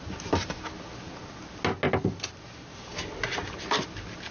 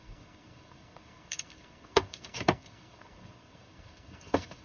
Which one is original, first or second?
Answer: first